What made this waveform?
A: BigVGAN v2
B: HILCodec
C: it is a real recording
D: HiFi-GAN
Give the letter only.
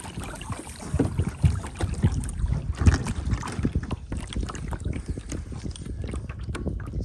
C